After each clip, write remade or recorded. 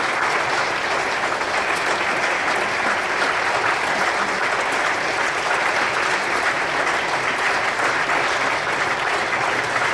recorded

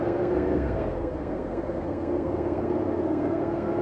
remade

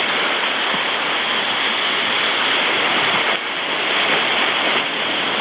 recorded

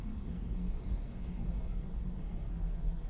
remade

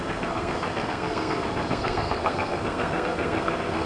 remade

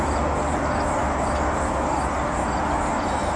recorded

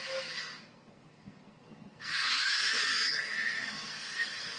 remade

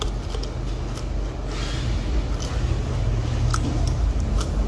recorded